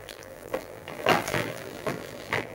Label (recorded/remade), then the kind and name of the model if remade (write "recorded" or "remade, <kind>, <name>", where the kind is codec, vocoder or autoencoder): remade, vocoder, BigVGAN v2